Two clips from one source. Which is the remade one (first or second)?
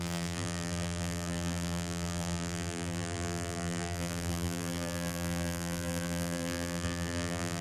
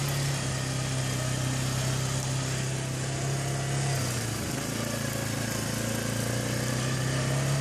first